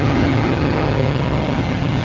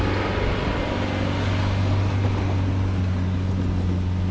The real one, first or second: second